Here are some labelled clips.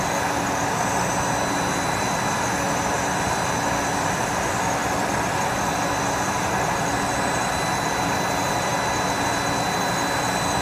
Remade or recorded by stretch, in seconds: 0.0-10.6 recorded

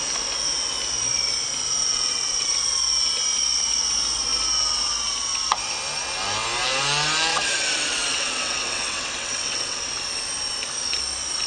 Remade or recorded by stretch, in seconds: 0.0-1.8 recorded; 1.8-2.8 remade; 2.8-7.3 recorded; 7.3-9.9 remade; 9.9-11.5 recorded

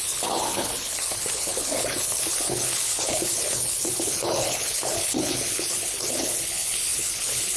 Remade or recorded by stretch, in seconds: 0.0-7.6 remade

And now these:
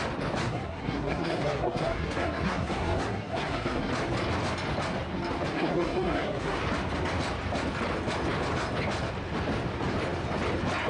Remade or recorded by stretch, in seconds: 0.0-0.4 recorded; 0.4-3.9 remade; 3.9-5.5 recorded; 5.5-6.6 remade; 6.6-10.9 recorded